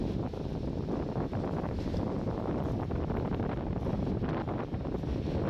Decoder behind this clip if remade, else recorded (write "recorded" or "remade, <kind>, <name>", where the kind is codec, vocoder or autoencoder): recorded